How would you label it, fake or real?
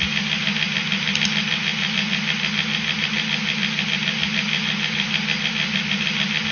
real